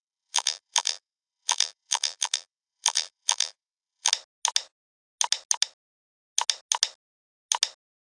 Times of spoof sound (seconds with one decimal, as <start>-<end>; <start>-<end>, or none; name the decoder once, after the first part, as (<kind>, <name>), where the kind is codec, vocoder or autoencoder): 0.0-4.1 (vocoder, BigVGAN v2)